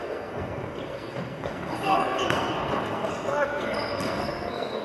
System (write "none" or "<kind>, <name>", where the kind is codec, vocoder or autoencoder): codec, SNAC